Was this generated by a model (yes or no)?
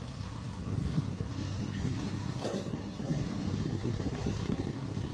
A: yes